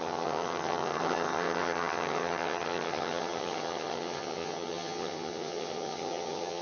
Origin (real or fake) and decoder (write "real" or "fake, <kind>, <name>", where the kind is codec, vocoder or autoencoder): fake, vocoder, HiFi-GAN